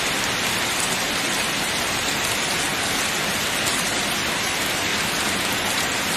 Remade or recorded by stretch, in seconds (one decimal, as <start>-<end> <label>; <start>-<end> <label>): 0.0-6.2 recorded